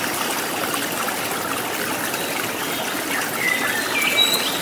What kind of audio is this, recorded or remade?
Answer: recorded